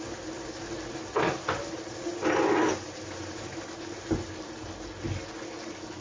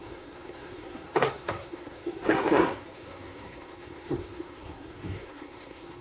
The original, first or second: first